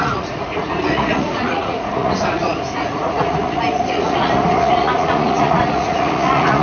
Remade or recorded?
remade